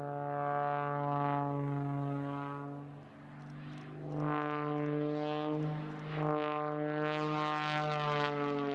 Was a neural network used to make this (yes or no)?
no